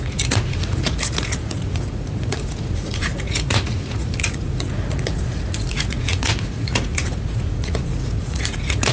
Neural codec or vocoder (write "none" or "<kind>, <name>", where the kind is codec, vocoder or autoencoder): vocoder, Vocos